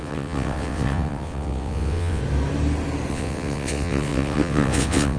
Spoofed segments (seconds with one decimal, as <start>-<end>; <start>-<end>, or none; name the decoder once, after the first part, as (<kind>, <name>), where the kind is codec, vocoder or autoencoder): 0.0-2.2 (vocoder, WaveNeXt); 3.1-5.2

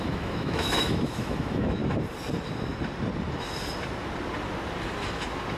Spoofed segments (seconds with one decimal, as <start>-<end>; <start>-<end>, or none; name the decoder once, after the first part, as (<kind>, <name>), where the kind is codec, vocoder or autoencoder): 0.0-1.8 (autoencoder, DAC-VAE)

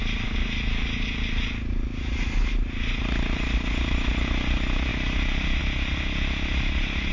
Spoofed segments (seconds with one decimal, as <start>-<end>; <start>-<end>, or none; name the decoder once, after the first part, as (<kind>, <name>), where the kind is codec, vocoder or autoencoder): none

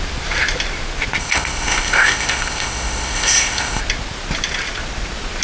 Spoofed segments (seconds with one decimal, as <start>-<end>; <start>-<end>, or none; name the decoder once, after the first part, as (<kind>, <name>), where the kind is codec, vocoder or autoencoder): 1.2-3.8 (codec, ZipCodec)